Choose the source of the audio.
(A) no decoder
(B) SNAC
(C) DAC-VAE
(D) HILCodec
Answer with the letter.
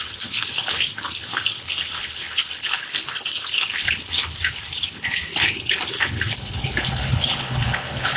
D